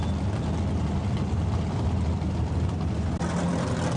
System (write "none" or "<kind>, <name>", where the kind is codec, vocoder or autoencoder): none